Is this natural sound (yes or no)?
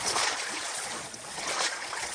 no